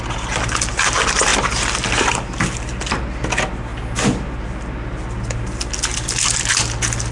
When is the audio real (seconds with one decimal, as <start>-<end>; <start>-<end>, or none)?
0.0-7.1